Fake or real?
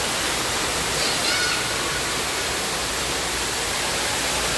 real